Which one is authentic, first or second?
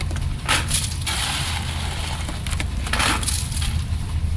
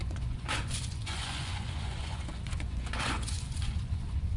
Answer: first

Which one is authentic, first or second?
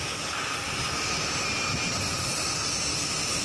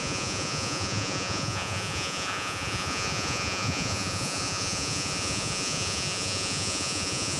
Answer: first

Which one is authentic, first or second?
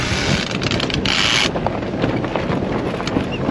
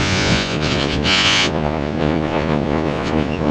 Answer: first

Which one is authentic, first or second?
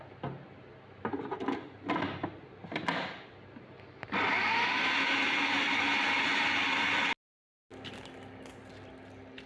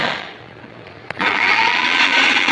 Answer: first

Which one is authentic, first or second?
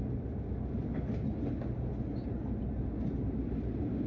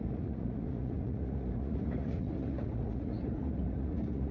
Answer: first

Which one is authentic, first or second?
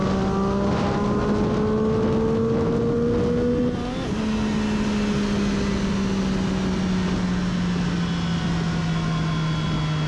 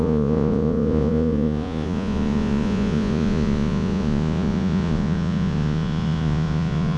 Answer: first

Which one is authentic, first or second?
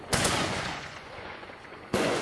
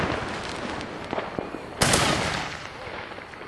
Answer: second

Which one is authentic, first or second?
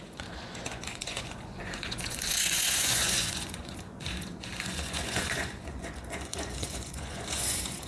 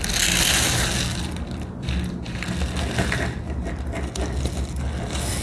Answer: second